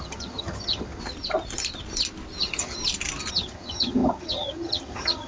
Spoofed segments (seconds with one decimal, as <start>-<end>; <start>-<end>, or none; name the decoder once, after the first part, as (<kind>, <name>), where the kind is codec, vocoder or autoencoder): 0.0-1.0 (vocoder, HiFi-GAN); 2.4-2.8; 3.3-5.3

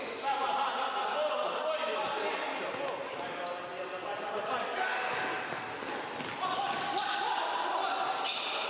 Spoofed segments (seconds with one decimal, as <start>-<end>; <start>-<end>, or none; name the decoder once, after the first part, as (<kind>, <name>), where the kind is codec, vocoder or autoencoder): none

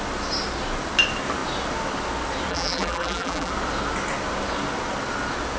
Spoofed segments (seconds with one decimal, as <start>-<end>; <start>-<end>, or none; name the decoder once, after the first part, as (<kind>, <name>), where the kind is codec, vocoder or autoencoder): 2.5-3.5 (vocoder, BigVGAN v2)

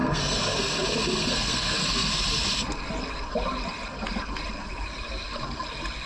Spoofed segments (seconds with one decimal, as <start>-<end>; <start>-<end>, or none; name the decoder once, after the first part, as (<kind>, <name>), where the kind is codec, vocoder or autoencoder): 0.0-0.6 (codec, SNAC); 1.2-2.2

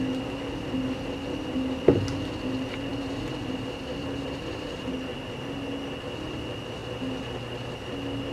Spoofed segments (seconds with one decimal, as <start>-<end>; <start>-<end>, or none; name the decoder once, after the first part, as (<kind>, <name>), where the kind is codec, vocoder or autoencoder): 2.9-4.8 (vocoder, BigVGAN v2)

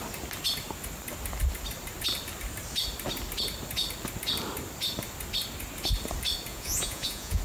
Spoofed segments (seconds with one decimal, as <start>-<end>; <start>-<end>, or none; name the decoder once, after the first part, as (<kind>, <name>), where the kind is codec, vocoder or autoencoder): 6.5-7.4 (vocoder, Vocos)

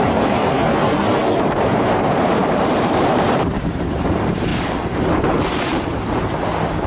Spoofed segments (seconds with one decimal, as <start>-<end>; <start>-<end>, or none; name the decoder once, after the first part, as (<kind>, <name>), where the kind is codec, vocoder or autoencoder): 0.0-6.9 (vocoder, BigVGAN v2)